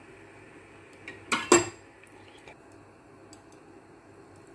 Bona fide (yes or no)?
yes